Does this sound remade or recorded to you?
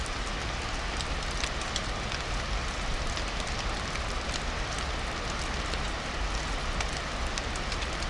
recorded